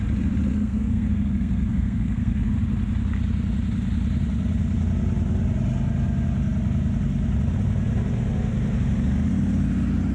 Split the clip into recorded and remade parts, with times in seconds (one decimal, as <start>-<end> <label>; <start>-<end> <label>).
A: 0.0-0.5 recorded; 0.5-2.5 remade; 2.5-10.1 recorded